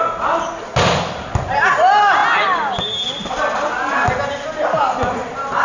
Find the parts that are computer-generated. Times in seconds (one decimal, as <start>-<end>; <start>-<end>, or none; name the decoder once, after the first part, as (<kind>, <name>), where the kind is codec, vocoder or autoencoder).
none